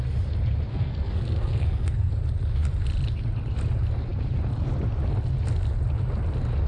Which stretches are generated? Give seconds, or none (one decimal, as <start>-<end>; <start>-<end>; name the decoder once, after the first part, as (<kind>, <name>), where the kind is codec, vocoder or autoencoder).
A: 0.7-2.1 (codec, SNAC)